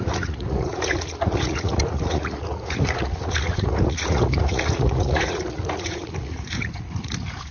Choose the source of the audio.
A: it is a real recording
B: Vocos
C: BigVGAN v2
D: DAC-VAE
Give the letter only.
B